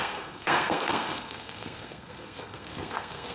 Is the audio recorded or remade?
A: remade